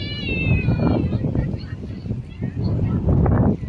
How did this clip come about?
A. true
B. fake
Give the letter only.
A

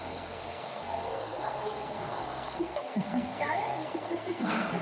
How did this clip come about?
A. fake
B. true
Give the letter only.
A